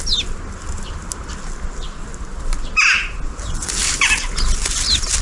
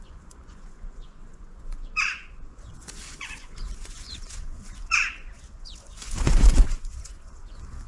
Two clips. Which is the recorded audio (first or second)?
first